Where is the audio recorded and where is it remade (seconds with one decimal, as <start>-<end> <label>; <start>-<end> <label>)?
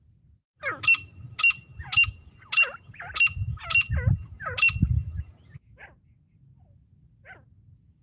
0.0-8.0 recorded